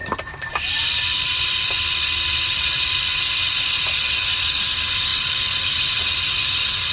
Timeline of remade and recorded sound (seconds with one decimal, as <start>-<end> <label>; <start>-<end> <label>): 0.0-1.8 remade; 1.8-5.1 recorded; 5.1-6.2 remade; 6.2-6.9 recorded